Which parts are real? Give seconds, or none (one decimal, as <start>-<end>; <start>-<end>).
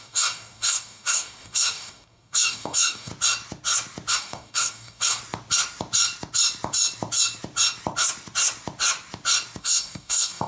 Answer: 3.1-4.1; 5.2-9.6